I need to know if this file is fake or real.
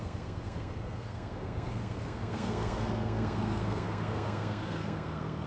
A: fake